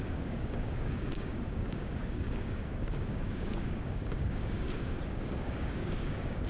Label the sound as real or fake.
fake